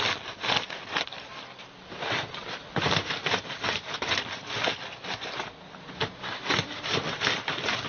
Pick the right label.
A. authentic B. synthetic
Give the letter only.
A